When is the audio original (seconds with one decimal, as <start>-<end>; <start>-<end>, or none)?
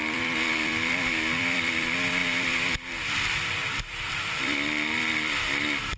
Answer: none